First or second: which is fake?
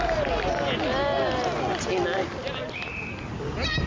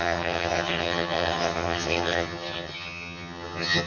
second